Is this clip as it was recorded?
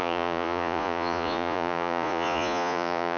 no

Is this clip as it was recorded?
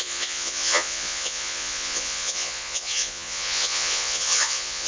no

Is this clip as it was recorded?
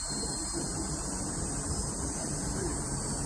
no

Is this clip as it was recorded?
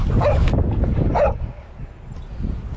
yes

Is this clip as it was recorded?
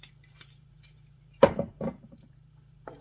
no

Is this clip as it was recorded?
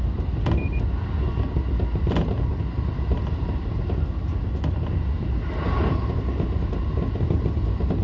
yes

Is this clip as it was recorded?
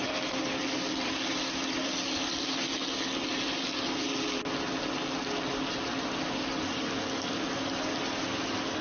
yes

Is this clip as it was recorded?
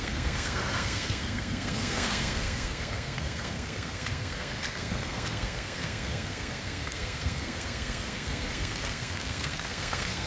no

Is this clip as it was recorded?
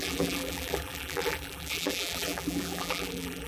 no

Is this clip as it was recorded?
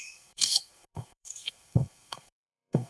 no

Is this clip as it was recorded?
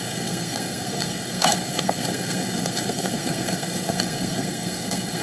no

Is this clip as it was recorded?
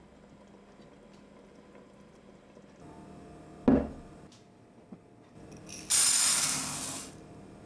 yes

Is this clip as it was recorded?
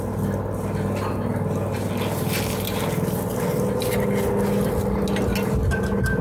yes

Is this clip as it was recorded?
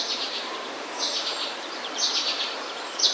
no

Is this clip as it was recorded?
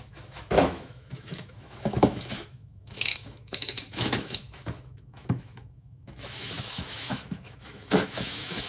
no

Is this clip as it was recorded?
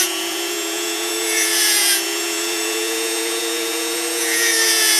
no